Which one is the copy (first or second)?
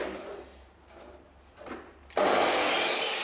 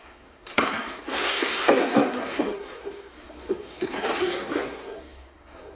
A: second